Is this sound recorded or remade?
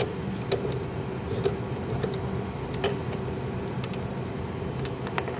recorded